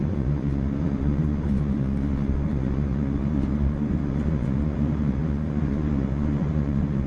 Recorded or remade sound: remade